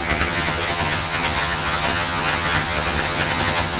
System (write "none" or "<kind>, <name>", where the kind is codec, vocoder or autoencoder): vocoder, HiFi-GAN